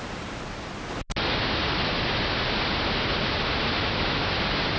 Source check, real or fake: real